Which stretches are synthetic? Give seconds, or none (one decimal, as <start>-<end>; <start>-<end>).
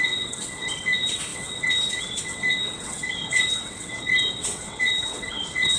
0.0-5.8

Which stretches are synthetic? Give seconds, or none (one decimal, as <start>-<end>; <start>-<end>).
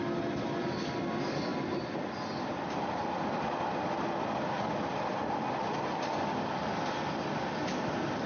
none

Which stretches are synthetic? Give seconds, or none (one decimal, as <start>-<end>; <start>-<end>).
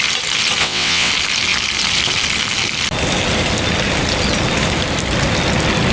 0.6-1.1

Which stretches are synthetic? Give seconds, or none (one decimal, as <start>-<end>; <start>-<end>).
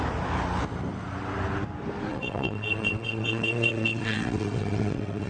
2.1-5.3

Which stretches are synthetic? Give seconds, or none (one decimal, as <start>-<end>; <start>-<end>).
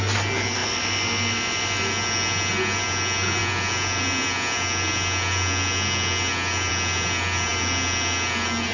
none